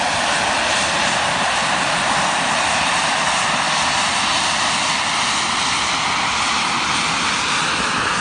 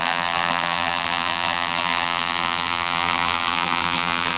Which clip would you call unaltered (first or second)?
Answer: first